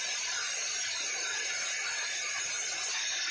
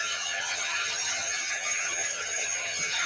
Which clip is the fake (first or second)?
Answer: second